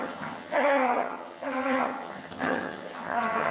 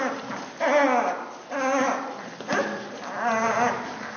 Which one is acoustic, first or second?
second